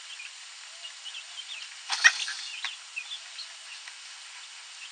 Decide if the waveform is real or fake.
real